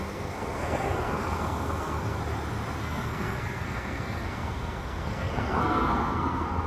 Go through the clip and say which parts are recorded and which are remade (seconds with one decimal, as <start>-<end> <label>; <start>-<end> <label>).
0.0-2.2 remade; 2.2-2.8 recorded; 2.8-6.7 remade